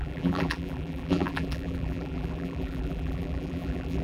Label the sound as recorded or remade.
remade